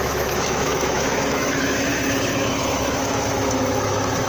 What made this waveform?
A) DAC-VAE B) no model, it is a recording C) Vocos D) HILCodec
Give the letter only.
A